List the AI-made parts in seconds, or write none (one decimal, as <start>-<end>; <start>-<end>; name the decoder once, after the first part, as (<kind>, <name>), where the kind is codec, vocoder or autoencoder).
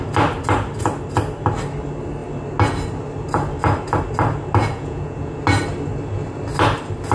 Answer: 4.6-5.4 (vocoder, Vocos)